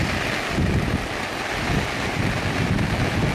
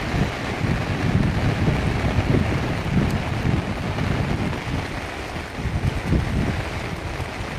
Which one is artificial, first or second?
first